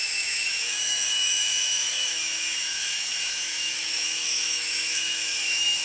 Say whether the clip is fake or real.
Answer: fake